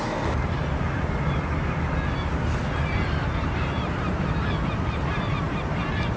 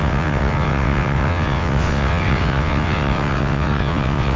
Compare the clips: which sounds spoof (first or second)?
second